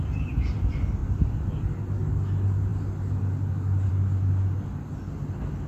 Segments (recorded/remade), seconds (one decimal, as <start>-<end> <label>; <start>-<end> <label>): 0.0-5.7 recorded